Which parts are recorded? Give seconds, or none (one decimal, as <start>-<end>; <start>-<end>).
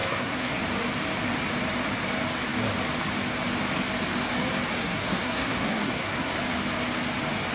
0.6-4.8; 6.3-7.5